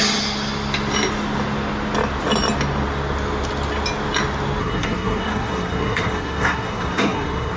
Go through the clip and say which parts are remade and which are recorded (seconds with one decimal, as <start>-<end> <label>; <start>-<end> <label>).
0.0-4.6 recorded; 4.6-7.6 remade